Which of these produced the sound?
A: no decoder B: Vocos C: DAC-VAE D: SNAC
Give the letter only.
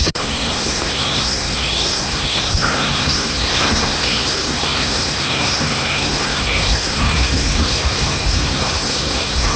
D